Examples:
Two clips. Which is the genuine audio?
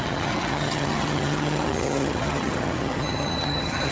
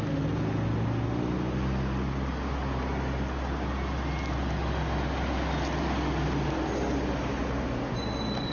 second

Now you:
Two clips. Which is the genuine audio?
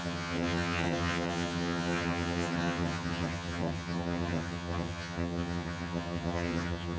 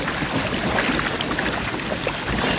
second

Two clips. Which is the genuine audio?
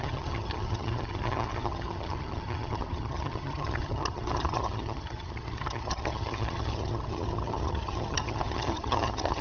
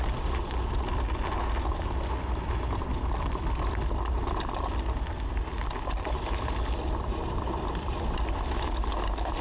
second